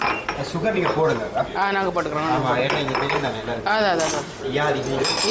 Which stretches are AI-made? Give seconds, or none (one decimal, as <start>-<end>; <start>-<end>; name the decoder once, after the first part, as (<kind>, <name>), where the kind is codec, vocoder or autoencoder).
0.0-1.4 (vocoder, BigVGAN v2); 2.6-5.3

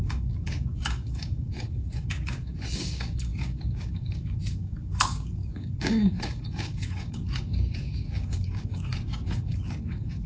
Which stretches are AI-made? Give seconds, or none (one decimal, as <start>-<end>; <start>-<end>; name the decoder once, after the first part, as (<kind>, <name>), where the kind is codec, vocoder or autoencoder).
0.0-10.3 (codec, DAC)

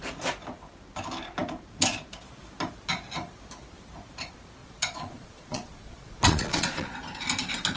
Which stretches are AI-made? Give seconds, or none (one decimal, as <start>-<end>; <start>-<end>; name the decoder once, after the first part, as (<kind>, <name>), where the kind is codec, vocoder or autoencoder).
4.6-6.9 (vocoder, Vocos)

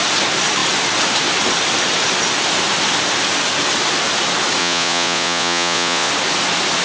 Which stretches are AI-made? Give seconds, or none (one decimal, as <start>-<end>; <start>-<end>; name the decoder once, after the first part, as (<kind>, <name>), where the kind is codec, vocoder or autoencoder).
4.6-6.1 (vocoder, Vocos)

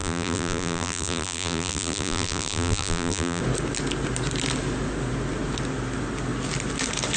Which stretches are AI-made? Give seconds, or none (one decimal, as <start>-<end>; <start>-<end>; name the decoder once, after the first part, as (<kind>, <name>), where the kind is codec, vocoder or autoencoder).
0.0-3.4 (vocoder, BigVGAN v2)

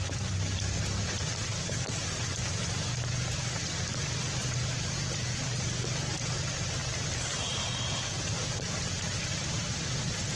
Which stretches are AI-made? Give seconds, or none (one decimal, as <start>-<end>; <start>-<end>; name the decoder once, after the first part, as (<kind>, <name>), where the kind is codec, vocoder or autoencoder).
none

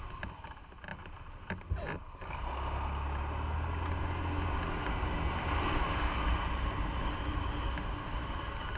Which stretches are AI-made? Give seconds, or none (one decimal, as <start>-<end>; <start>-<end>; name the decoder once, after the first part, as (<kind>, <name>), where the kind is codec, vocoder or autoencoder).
none